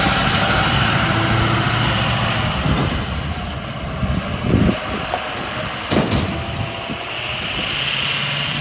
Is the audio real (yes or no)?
yes